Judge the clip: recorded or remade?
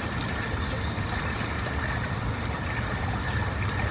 recorded